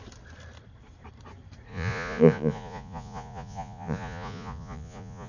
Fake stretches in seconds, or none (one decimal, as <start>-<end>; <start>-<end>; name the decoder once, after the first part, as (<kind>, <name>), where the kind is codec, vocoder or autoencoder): 1.7-5.3 (vocoder, Vocos)